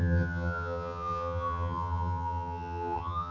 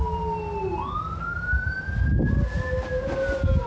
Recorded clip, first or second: second